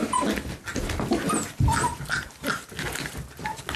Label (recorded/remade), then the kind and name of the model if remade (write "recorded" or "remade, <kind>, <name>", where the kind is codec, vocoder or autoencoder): recorded